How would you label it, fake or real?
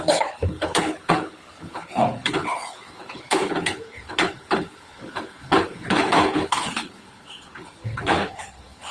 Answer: fake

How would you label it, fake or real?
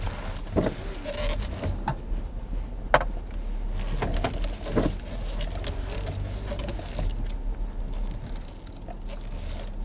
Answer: real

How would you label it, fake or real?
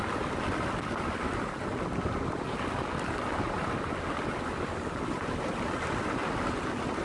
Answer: real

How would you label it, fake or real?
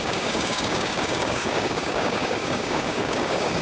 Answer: fake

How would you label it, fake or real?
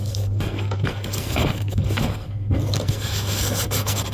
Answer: fake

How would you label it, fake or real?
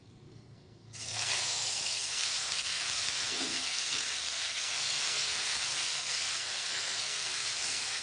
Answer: fake